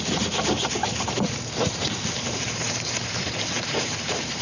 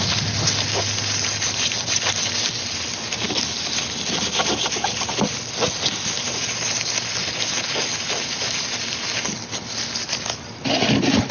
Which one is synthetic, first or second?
first